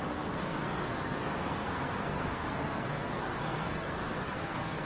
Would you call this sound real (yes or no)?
no